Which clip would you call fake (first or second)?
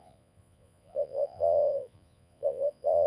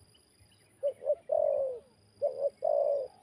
first